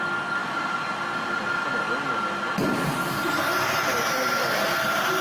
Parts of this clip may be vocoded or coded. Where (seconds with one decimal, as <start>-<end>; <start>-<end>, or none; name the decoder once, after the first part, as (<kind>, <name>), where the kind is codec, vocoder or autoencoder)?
none